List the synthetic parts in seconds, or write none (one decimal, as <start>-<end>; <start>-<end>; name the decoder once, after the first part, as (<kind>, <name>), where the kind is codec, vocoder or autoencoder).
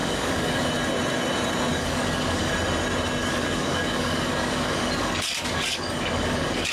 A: 0.0-0.7 (codec, DAC); 1.7-2.5; 3.2-6.7